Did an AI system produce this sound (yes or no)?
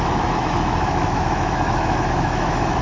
yes